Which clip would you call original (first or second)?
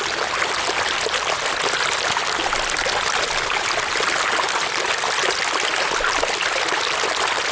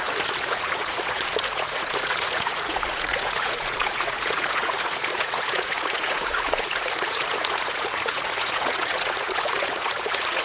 first